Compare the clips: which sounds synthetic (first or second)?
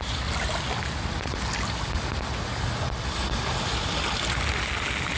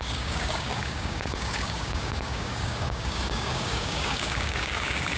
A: second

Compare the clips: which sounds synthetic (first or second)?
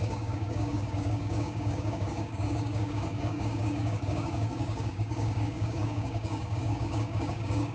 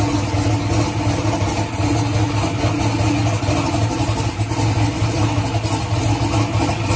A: first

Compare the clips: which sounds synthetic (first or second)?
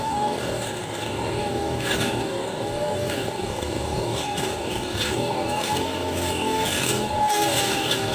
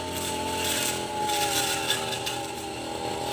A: first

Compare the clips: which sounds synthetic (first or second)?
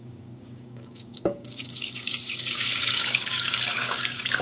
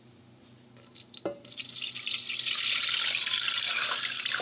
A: first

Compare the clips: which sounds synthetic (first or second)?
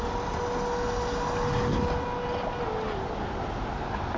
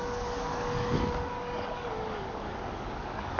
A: second